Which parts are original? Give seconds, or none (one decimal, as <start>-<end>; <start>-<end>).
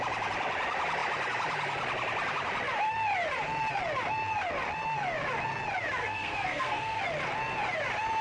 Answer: 0.0-6.0; 7.0-8.2